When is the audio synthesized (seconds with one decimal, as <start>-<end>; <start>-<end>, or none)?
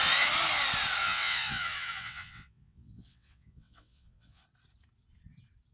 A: 1.0-4.4